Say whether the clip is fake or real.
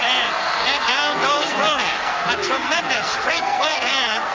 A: fake